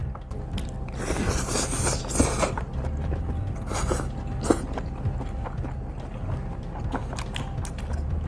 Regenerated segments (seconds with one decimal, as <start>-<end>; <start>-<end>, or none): none